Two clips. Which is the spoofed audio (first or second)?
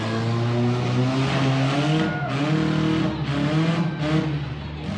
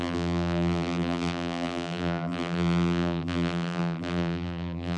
second